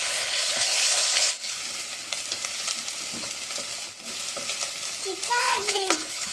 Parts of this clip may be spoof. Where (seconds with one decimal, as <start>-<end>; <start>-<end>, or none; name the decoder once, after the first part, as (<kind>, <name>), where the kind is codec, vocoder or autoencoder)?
0.0-1.6 (codec, HILCodec); 5.4-6.3